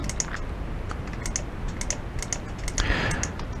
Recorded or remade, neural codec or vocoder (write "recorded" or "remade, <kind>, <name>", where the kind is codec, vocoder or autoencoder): recorded